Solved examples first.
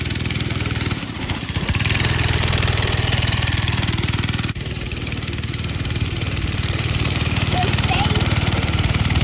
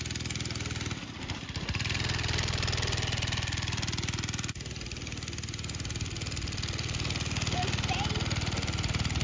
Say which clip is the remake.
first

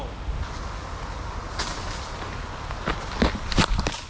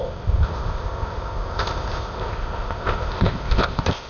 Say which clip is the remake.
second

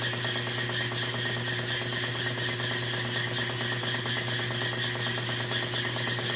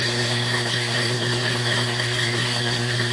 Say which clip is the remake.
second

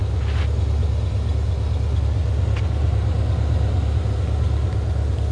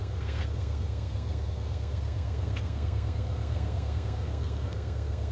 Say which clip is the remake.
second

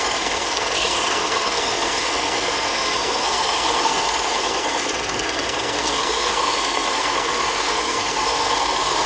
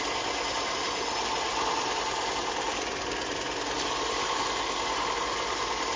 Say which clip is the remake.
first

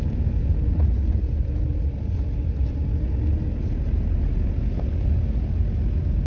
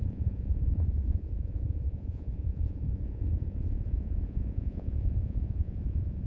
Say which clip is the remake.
second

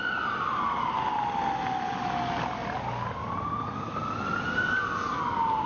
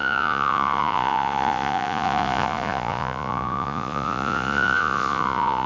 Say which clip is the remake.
second